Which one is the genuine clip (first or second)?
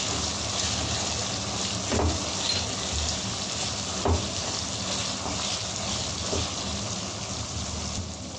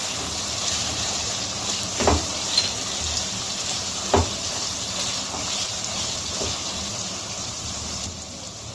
first